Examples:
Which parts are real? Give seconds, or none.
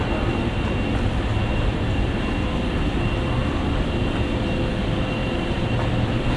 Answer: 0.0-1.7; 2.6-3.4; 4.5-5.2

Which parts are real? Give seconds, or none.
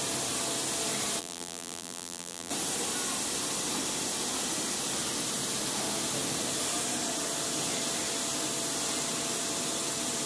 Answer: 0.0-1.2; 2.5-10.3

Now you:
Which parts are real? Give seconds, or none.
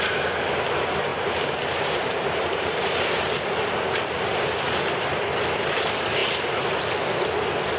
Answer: 0.0-1.1; 4.2-7.8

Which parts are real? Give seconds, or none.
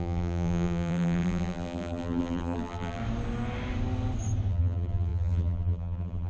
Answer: 3.0-4.5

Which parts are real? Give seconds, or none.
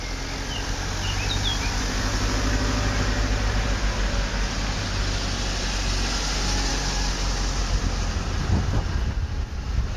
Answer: 0.0-10.0